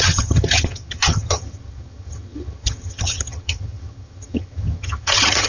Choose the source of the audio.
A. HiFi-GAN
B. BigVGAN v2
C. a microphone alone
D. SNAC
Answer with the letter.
A